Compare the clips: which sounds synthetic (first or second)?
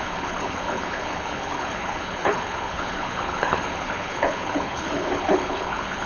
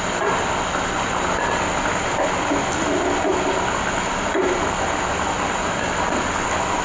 first